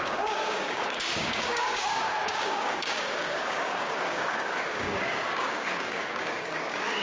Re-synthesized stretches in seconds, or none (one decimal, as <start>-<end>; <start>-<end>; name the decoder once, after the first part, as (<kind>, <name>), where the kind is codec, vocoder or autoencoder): 0.0-7.0 (codec, DAC)